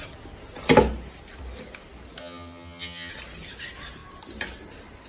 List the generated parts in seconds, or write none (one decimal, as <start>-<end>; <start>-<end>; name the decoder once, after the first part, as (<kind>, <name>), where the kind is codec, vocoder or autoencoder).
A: 2.2-3.1 (vocoder, HiFi-GAN)